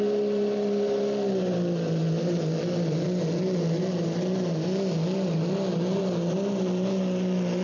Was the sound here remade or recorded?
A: recorded